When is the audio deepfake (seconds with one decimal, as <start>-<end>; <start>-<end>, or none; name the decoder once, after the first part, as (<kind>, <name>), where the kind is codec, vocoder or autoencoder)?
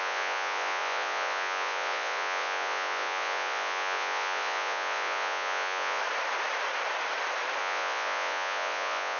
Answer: 0.0-6.0 (vocoder, Vocos); 7.6-9.2